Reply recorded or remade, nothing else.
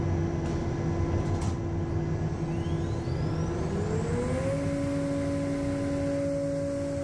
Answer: recorded